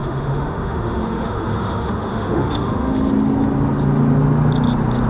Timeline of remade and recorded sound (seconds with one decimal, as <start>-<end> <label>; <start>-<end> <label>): 0.0-3.1 remade; 3.1-5.1 recorded

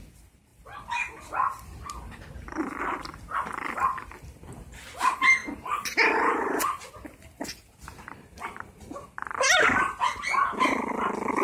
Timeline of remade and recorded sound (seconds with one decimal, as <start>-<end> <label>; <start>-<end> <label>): 0.0-11.4 recorded

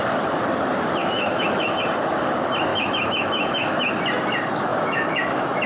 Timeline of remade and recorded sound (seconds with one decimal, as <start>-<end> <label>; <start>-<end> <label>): 0.0-1.0 recorded; 1.0-1.8 remade; 1.8-2.7 recorded; 2.7-3.9 remade; 3.9-4.7 recorded; 4.7-5.7 remade

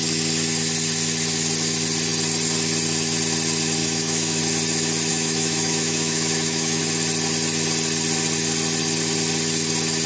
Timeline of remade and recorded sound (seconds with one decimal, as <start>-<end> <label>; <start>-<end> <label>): 0.0-3.8 recorded; 3.8-4.4 remade; 4.4-5.1 recorded; 5.1-6.8 remade; 6.8-10.1 recorded